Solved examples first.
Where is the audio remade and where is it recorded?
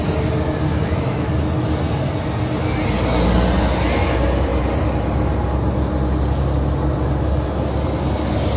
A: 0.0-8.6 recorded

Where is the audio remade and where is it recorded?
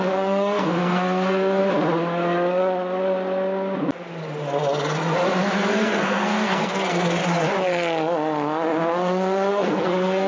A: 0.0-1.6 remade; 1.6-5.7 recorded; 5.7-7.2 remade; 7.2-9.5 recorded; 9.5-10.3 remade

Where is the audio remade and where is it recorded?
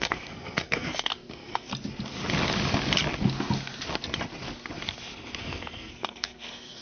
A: 0.0-1.7 remade; 1.7-5.4 recorded; 5.4-6.8 remade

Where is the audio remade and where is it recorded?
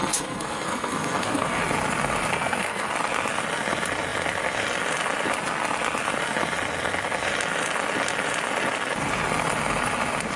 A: 0.0-1.6 remade; 1.6-2.3 recorded; 2.3-2.9 remade; 2.9-10.4 recorded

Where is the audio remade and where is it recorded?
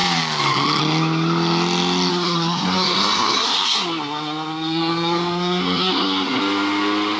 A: 0.0-2.1 recorded; 2.1-6.4 remade; 6.4-7.2 recorded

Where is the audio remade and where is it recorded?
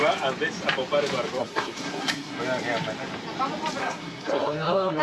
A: 0.0-1.4 recorded; 1.4-2.4 remade; 2.4-3.8 recorded; 3.8-5.0 remade